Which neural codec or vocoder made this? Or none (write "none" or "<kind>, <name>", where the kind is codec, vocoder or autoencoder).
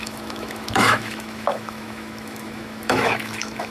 autoencoder, DAC-VAE